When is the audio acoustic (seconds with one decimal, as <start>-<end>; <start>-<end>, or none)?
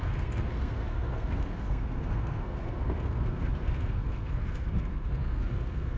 none